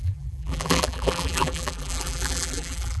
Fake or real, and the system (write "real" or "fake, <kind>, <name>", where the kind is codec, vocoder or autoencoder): fake, vocoder, BigVGAN v2